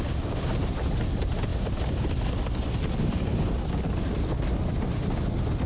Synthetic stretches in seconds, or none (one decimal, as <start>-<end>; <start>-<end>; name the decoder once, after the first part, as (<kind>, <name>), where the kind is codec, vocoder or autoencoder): none